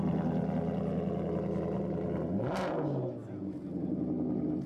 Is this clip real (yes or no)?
yes